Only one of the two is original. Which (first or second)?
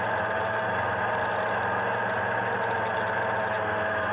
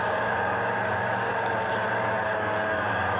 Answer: first